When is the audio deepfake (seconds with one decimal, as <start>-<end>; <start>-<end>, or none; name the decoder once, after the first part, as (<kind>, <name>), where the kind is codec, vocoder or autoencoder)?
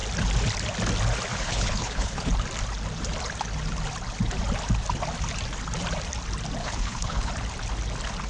1.3-2.3 (codec, HILCodec); 6.6-7.3